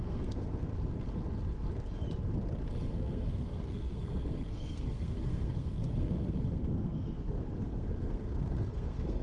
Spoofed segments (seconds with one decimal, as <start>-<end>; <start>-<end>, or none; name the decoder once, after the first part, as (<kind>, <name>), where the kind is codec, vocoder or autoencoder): 0.0-0.7 (codec, SNAC); 2.9-9.2